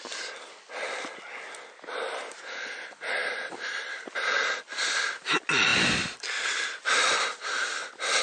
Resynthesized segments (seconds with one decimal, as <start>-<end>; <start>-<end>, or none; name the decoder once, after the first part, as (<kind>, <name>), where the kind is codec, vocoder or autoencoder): none